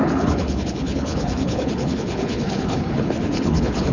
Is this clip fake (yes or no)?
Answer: yes